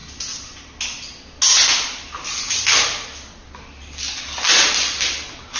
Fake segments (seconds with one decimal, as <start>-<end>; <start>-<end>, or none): none